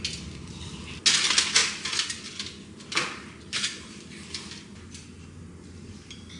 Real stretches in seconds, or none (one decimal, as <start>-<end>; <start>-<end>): 0.0-6.4

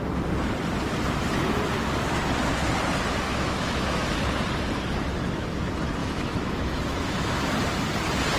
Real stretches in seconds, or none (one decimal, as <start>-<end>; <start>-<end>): 0.0-3.3; 4.0-6.0; 7.5-8.4

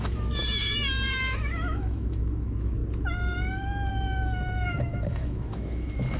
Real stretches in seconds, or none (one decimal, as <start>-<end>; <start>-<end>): 2.8-3.9

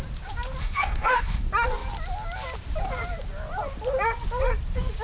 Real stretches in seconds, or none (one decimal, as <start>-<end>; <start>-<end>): 0.0-0.6; 1.4-5.0

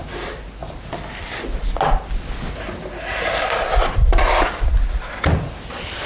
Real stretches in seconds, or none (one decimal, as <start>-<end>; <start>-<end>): 0.0-6.1

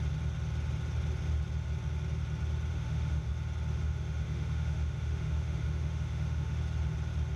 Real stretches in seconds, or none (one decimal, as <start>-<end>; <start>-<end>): 0.0-2.7; 3.3-3.7; 6.6-7.4